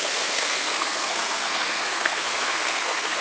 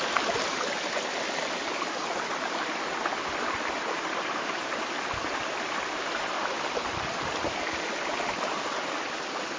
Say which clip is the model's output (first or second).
first